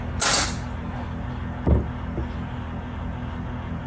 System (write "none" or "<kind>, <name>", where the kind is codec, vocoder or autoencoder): none